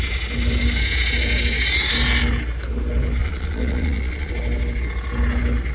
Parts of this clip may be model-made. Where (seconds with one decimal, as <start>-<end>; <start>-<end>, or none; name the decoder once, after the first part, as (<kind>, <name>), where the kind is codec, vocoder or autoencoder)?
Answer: 3.2-4.3 (vocoder, Vocos)